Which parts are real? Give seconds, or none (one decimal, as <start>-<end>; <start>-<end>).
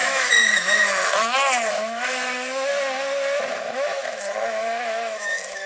2.7-3.5